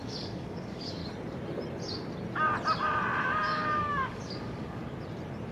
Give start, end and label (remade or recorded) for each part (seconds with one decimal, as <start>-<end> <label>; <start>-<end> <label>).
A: 0.0-1.0 remade; 1.0-3.2 recorded; 3.2-4.8 remade; 4.8-5.5 recorded